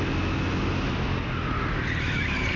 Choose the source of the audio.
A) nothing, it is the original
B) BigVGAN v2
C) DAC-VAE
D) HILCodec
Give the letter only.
A